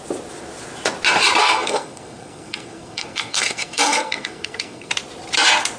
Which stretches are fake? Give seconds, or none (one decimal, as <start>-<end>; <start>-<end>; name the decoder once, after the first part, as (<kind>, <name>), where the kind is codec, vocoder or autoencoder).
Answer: 1.4-4.9 (codec, SNAC)